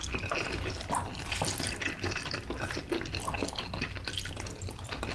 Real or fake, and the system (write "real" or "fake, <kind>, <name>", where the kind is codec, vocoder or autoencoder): real